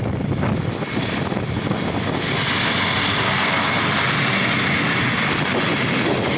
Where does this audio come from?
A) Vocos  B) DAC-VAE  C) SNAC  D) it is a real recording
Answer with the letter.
D